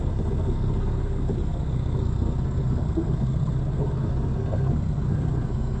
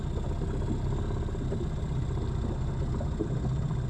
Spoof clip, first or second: first